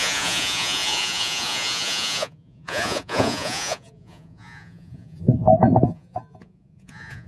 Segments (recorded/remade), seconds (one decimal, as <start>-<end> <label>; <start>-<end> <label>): 0.0-7.3 remade